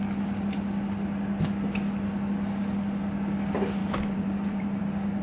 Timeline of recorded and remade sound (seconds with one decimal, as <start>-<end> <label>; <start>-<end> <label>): 0.0-3.8 recorded; 3.8-4.8 remade; 4.8-5.2 recorded